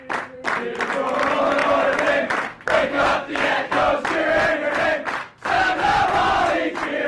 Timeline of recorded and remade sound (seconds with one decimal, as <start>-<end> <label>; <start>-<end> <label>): 0.0-2.5 recorded; 2.5-3.8 remade; 3.8-5.2 recorded; 5.2-6.0 remade; 6.0-7.1 recorded